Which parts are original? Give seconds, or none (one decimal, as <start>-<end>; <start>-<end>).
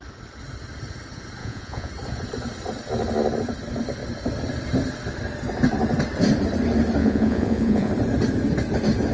0.0-1.4; 1.9-7.0; 7.9-9.1